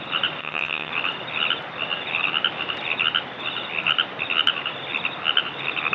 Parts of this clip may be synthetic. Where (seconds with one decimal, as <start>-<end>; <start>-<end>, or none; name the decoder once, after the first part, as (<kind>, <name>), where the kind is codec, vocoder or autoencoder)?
0.4-0.9 (vocoder, HiFi-GAN)

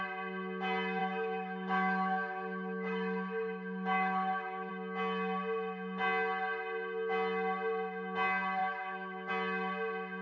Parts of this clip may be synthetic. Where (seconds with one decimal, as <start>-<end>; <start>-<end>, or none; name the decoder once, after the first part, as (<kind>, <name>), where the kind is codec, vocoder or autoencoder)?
1.0-4.7 (autoencoder, DAC-VAE); 8.6-9.3

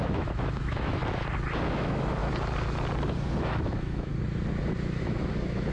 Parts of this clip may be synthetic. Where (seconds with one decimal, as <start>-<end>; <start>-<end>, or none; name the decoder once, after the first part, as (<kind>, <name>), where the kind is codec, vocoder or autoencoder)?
0.0-1.0 (autoencoder, DAC-VAE); 1.7-2.2; 3.4-4.1; 5.0-5.7

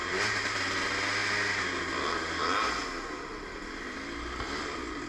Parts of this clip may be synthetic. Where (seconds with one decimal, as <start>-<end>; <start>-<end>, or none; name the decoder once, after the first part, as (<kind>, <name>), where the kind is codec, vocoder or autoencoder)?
0.0-0.6 (vocoder, BigVGAN v2)

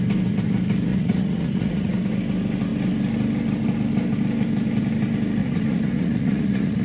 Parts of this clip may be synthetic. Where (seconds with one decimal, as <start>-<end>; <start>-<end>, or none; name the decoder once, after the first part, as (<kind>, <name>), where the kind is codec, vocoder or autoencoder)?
0.9-1.9 (vocoder, Vocos); 5.4-6.8

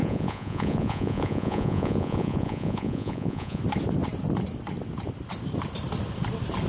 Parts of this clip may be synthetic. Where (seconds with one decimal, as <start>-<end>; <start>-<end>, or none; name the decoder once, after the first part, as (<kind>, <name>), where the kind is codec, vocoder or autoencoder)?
0.0-3.6 (vocoder, Vocos)